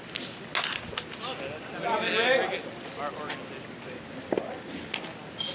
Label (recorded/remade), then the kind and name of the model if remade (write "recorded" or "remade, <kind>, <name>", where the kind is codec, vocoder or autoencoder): recorded